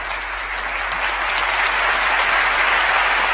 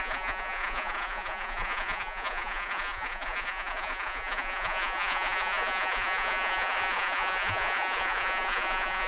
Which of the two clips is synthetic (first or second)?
second